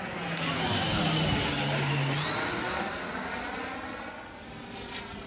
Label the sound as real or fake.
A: real